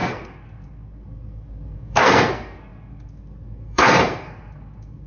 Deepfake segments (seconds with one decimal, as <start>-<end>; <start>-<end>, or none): 0.0-5.1